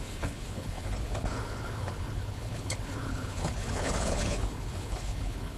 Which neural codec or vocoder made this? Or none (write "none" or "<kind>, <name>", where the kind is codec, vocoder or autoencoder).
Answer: codec, HILCodec